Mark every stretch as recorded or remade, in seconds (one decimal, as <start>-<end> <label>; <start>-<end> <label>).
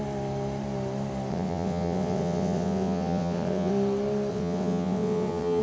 0.0-1.3 recorded; 1.3-3.7 remade; 3.7-4.3 recorded; 4.3-5.6 remade